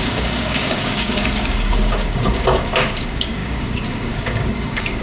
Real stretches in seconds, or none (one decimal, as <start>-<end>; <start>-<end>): none